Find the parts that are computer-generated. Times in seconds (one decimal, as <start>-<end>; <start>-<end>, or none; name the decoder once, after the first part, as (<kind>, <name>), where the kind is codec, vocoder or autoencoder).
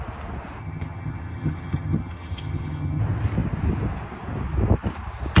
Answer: 0.6-3.0 (vocoder, HiFi-GAN)